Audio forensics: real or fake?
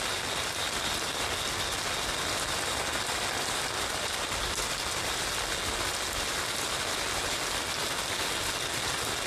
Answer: real